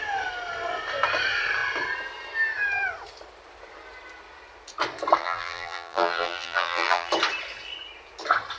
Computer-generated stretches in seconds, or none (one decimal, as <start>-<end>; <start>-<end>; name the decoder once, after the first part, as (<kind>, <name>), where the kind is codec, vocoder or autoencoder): 5.2-7.1 (vocoder, BigVGAN v2)